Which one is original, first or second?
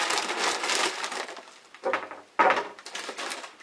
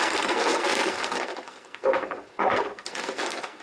first